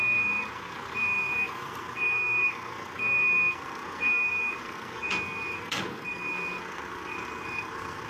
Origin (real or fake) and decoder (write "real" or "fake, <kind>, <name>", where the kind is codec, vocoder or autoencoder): fake, codec, SNAC